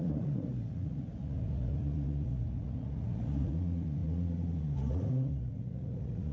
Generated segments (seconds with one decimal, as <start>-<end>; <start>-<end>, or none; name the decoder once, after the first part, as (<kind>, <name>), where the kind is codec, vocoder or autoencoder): 0.0-6.3 (vocoder, Vocos)